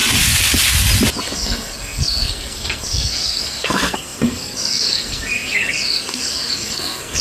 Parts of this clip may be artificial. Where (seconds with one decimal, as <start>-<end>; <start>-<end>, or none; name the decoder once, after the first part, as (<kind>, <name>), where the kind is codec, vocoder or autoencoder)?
1.2-7.2 (codec, SNAC)